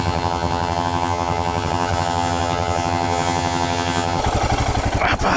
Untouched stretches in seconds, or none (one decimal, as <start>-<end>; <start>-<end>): 4.2-5.4